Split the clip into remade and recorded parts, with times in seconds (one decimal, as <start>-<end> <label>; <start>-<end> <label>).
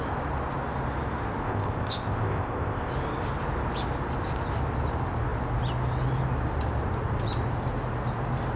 0.0-1.4 recorded; 1.4-2.9 remade; 2.9-8.6 recorded